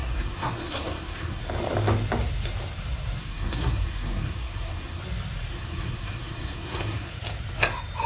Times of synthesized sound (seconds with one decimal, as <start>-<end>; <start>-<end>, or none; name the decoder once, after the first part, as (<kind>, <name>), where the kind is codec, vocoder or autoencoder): 0.0-1.4 (codec, SNAC); 3.2-5.0; 5.5-7.1